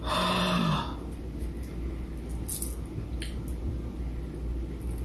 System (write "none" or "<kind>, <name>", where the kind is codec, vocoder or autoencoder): none